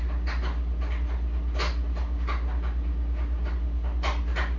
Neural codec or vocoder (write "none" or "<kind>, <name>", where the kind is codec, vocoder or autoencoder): none